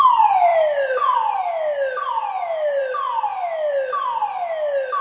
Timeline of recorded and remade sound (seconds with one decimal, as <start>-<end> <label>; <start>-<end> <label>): 0.0-5.0 recorded